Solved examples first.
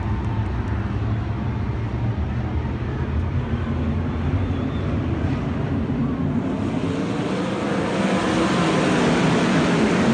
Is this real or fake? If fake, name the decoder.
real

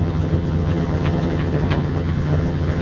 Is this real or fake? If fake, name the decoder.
fake, vocoder, HiFi-GAN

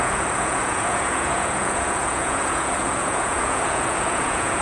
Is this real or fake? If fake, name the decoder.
fake, vocoder, Vocos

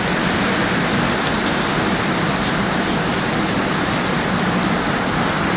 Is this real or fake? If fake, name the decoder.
fake, vocoder, BigVGAN v2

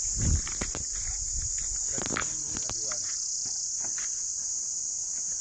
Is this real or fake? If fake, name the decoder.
real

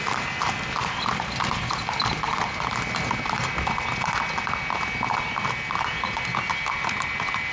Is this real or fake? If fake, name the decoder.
real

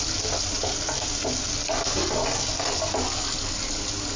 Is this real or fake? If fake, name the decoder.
real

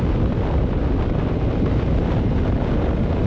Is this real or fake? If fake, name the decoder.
real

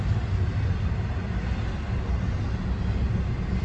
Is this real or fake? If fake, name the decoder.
real